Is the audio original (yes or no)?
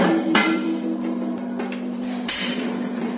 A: no